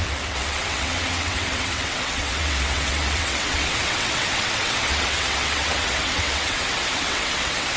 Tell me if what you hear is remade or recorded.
remade